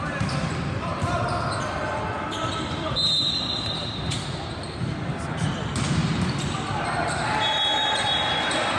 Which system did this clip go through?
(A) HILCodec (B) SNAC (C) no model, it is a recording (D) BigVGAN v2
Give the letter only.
C